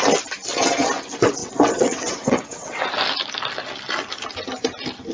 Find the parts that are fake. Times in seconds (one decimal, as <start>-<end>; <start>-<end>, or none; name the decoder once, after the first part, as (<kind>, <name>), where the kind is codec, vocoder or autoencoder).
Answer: 1.4-2.8 (vocoder, WaveNeXt)